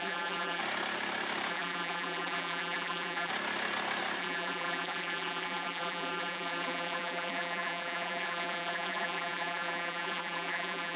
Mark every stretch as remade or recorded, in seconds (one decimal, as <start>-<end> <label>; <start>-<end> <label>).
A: 0.0-0.6 remade; 0.6-1.5 recorded; 1.5-3.3 remade; 3.3-4.2 recorded; 4.2-11.0 remade